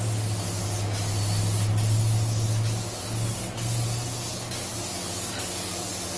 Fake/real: real